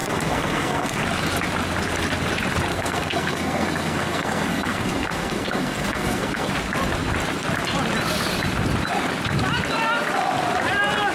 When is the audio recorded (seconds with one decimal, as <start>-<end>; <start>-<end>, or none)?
1.0-2.7; 6.5-11.1

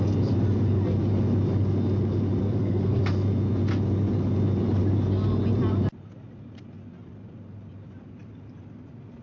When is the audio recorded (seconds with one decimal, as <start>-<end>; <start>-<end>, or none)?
0.0-2.4; 3.0-9.2

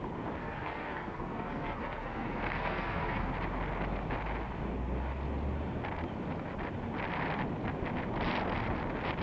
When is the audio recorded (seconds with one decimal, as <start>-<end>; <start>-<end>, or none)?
0.0-0.4; 3.3-9.2

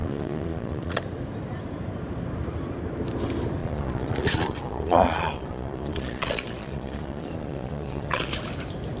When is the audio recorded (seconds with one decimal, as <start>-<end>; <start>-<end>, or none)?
1.0-3.6; 8.3-9.0

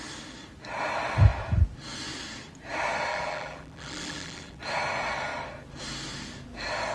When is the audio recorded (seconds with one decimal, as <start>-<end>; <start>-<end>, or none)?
0.0-3.1; 4.6-6.9

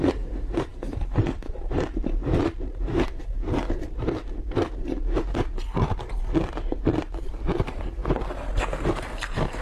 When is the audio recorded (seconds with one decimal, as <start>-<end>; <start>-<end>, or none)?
8.0-8.9

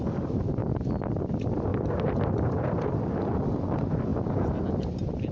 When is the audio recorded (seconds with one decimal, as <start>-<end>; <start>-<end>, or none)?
0.0-5.3

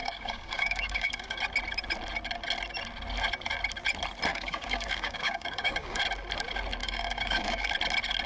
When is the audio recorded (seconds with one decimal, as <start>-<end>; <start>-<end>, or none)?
1.4-4.3; 6.0-6.8; 7.7-8.3